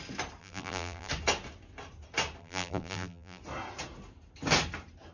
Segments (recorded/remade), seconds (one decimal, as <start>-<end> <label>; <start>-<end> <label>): 0.0-0.4 recorded; 0.4-1.1 remade; 1.1-2.4 recorded; 2.4-3.4 remade; 3.4-5.1 recorded